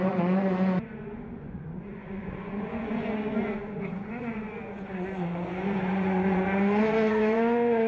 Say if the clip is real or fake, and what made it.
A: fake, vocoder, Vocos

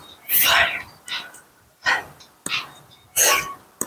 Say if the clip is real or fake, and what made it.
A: real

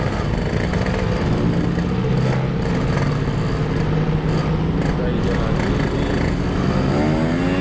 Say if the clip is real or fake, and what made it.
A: real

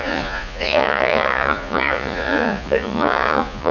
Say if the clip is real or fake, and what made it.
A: fake, vocoder, Vocos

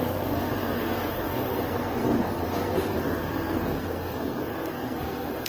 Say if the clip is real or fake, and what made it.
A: fake, codec, SNAC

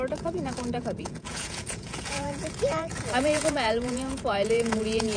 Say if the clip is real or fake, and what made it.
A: fake, vocoder, Vocos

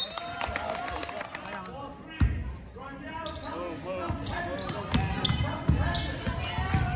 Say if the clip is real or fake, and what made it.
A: real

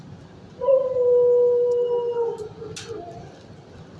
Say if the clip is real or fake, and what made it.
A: real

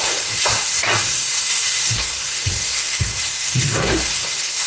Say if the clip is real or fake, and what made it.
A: fake, codec, SNAC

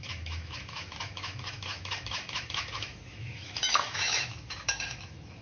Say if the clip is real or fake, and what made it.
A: fake, autoencoder, DAC-VAE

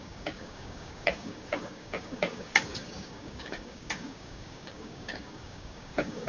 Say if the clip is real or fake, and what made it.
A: fake, codec, DAC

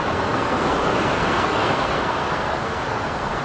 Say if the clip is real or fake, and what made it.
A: fake, codec, SNAC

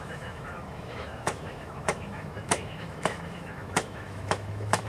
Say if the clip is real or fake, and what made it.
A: fake, autoencoder, DAC-VAE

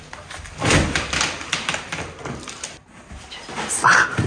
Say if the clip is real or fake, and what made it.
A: real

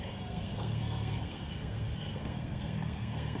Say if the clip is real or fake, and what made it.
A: fake, codec, SNAC